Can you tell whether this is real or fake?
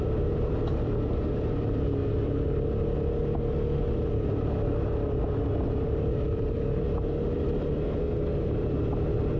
real